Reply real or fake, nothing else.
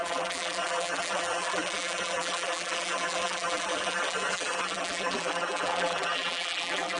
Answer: fake